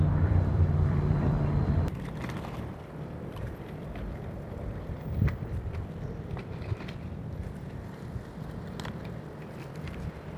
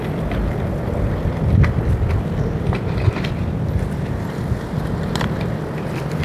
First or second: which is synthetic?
first